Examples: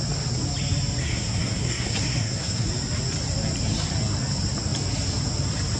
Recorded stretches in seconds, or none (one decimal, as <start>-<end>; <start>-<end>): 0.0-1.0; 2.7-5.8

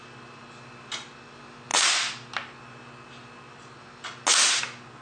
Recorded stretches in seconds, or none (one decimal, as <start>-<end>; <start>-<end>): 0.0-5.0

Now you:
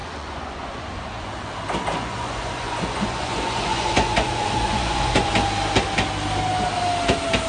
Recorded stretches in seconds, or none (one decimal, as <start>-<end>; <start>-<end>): 1.3-2.0; 5.3-7.5

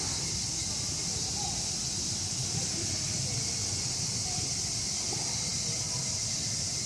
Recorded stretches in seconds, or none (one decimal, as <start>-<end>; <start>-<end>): 0.0-6.9

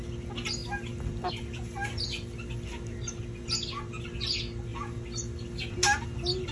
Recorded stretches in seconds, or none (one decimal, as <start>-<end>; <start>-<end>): 0.0-6.5